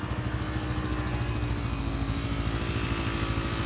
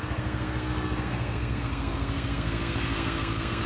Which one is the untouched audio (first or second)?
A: first